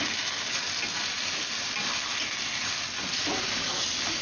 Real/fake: real